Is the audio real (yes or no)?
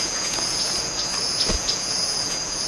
no